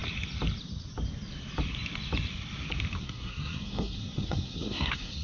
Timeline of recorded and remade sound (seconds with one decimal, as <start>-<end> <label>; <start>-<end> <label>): 0.0-3.0 recorded; 3.0-5.2 remade